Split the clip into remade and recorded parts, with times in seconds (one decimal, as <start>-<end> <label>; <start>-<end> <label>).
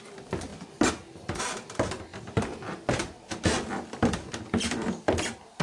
0.0-0.5 remade; 0.5-1.4 recorded; 1.4-5.6 remade